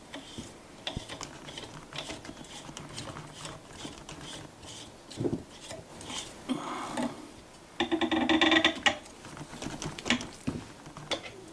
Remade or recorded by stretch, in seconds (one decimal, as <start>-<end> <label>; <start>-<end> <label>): 0.0-11.5 recorded